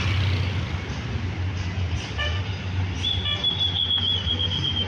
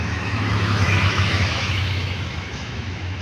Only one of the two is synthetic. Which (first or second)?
second